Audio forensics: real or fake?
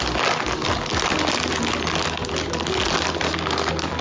real